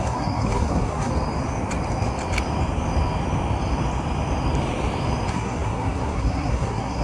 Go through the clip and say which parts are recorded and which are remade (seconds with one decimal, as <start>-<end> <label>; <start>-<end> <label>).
0.0-1.1 remade; 1.1-5.3 recorded; 5.3-7.0 remade